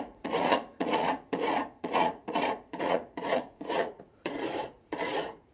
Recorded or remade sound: remade